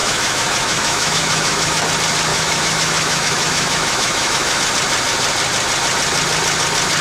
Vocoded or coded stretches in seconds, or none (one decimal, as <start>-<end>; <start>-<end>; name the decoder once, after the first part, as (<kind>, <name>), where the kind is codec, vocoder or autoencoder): 0.0-1.9 (autoencoder, DAC-VAE); 2.3-4.6